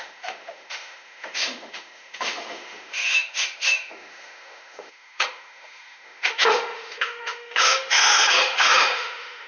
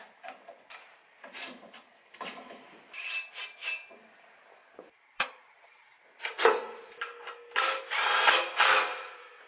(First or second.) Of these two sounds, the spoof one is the first